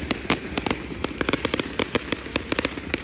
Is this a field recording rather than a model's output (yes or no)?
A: no